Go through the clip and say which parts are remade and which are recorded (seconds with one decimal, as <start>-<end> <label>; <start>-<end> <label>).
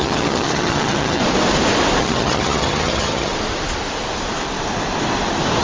0.0-1.2 remade; 1.2-2.0 recorded; 2.0-3.3 remade; 3.3-5.6 recorded